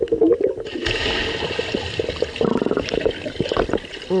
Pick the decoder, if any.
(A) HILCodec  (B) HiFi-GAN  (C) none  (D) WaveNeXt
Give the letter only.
C